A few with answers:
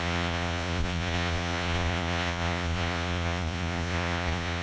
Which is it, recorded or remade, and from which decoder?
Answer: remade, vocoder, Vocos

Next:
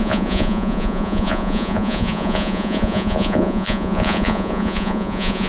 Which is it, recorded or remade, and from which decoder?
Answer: remade, vocoder, Vocos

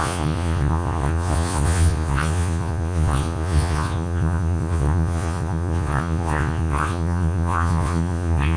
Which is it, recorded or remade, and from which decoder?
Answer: remade, vocoder, Vocos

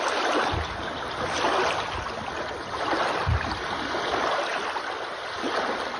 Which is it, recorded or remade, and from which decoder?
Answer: recorded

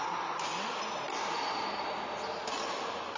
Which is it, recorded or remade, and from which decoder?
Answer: recorded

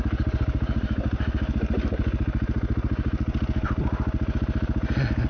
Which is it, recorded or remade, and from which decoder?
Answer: recorded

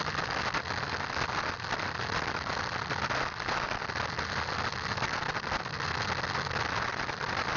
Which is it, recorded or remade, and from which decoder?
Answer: recorded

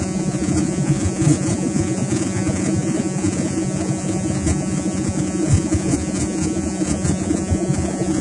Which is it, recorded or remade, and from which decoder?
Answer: remade, vocoder, Vocos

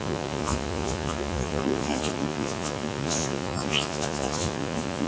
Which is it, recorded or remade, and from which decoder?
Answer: remade, vocoder, Vocos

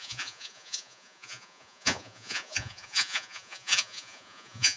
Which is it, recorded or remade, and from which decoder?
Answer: remade, vocoder, Vocos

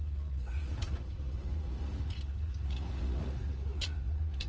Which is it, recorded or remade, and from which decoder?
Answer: remade, vocoder, Vocos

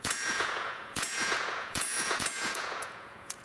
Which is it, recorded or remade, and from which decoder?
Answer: remade, vocoder, Vocos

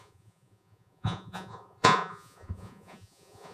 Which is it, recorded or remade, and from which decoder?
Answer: remade, vocoder, Vocos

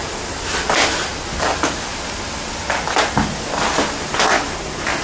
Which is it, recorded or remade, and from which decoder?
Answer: recorded